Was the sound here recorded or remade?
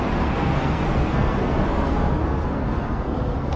remade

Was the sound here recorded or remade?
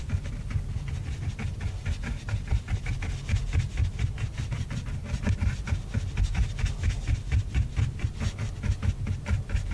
recorded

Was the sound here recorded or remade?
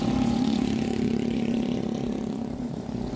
remade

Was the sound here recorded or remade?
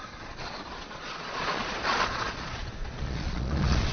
remade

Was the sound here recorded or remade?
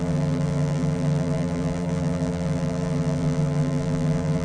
remade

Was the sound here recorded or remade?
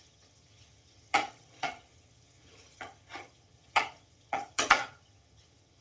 remade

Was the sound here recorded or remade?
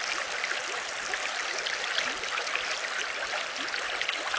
recorded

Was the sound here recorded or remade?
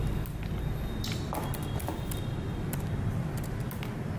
recorded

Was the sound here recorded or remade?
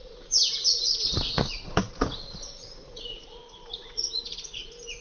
remade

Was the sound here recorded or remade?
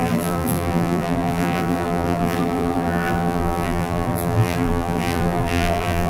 remade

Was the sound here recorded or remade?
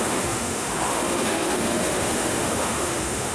remade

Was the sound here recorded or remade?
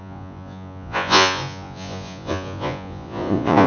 remade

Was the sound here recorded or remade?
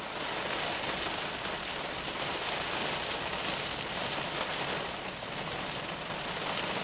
recorded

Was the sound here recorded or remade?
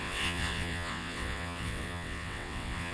remade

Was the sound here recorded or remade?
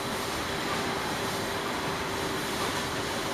remade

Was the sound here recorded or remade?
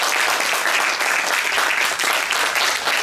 recorded